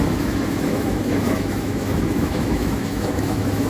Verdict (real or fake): fake